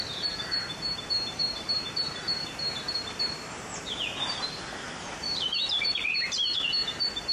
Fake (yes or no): yes